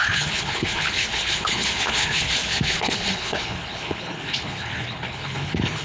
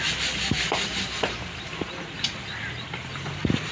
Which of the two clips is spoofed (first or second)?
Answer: first